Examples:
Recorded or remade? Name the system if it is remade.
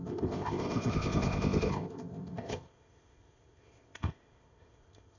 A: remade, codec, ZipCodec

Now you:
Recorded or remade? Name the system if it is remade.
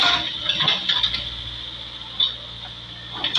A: recorded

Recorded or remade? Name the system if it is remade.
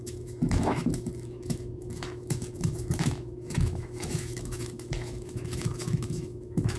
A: remade, autoencoder, DAC-VAE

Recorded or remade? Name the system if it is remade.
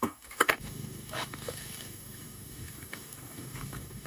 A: remade, codec, DAC